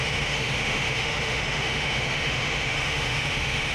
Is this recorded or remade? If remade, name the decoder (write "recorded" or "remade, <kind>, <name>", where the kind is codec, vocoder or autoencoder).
remade, autoencoder, DAC-VAE